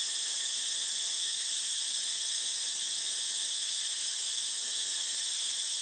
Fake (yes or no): yes